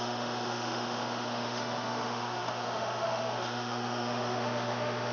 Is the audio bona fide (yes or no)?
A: no